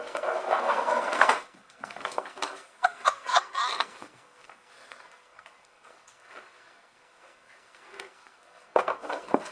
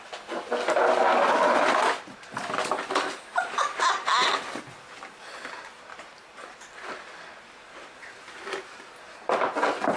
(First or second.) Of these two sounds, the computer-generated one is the first